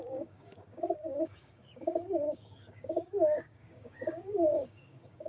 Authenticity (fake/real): fake